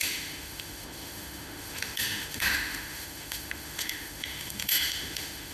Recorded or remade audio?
remade